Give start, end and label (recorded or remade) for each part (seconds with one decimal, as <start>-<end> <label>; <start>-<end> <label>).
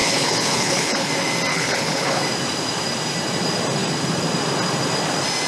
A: 0.0-1.1 remade; 1.1-1.5 recorded; 1.5-2.2 remade; 2.2-5.5 recorded